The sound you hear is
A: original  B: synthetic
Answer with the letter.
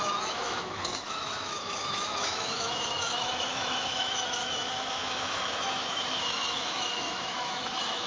B